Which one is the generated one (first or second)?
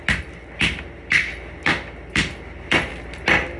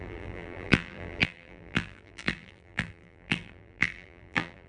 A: second